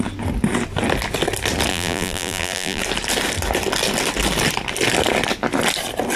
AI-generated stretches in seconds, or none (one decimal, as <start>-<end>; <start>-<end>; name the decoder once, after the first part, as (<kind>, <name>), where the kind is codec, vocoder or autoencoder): 1.7-2.8 (vocoder, BigVGAN v2)